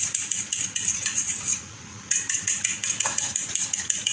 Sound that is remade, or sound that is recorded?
remade